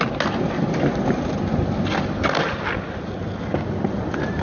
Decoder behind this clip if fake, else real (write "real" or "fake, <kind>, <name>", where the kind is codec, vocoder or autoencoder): real